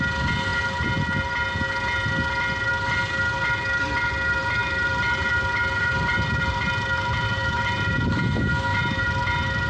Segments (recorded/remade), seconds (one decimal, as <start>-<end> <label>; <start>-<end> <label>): 0.0-4.4 recorded; 4.4-8.2 remade; 8.2-8.7 recorded; 8.7-9.7 remade